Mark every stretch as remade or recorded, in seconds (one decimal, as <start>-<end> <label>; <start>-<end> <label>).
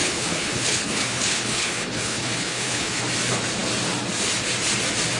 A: 0.0-3.0 remade; 3.0-5.2 recorded